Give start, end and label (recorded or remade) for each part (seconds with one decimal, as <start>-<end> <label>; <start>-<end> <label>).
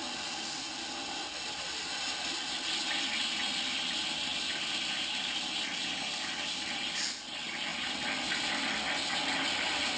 0.0-10.0 recorded